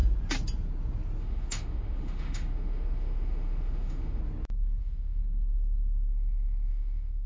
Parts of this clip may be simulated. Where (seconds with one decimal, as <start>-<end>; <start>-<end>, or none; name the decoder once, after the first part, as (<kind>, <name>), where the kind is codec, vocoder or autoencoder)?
1.2-4.2 (autoencoder, DAC-VAE); 4.8-5.2; 6.7-7.3